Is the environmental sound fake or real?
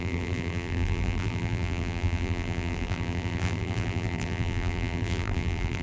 fake